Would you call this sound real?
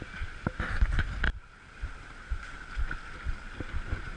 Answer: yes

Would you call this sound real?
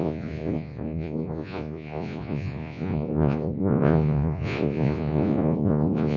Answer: no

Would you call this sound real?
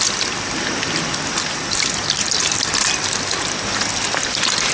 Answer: yes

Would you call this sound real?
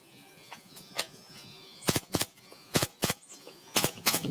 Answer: no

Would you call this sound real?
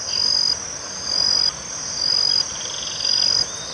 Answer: yes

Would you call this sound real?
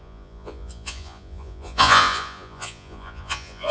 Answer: no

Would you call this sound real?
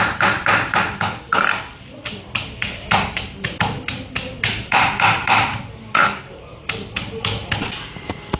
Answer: yes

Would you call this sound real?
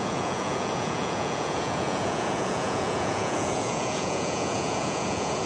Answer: no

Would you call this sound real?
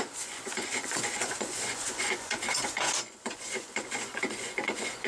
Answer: no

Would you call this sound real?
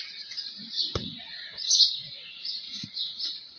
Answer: no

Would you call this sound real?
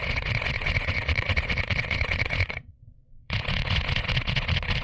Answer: no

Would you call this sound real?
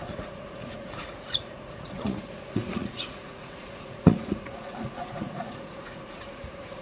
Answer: no